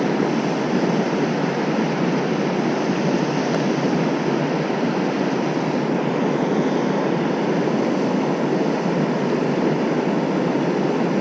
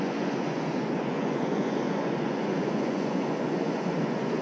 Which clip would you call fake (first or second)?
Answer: second